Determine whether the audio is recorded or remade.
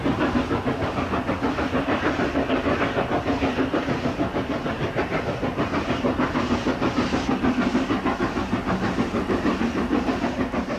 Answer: recorded